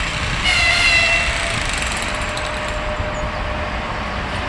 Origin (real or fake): real